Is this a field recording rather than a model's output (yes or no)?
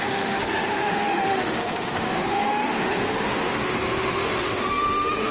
no